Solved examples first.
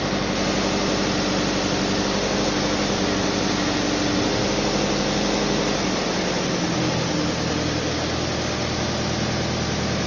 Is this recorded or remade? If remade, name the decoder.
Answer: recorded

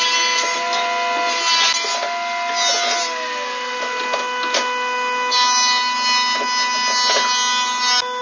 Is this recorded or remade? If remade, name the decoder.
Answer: recorded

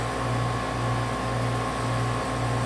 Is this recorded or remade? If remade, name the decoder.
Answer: recorded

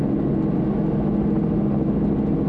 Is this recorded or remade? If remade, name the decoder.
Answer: recorded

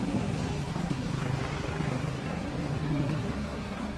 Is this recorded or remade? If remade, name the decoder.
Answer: remade, codec, SNAC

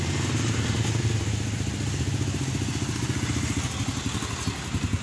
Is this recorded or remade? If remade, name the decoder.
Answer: recorded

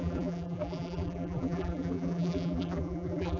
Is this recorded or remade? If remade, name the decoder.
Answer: remade, vocoder, BigVGAN v2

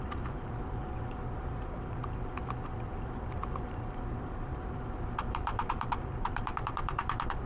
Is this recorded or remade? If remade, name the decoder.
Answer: remade, vocoder, BigVGAN v2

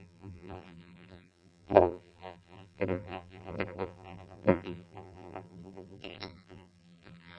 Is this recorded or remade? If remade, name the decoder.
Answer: remade, vocoder, BigVGAN v2